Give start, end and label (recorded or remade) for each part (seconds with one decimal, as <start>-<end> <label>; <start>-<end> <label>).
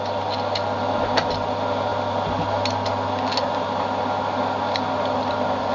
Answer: 0.0-5.7 recorded